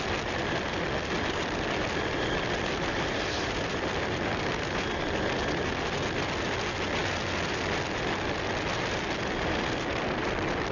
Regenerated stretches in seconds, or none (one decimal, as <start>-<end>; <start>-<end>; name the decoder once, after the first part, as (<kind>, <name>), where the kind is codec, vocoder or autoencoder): none